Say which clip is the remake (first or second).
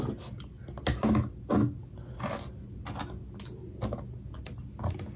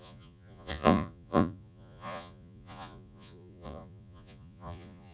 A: second